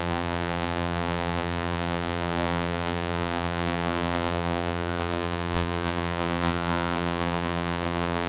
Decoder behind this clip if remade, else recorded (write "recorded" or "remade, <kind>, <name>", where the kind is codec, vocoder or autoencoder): remade, vocoder, BigVGAN v2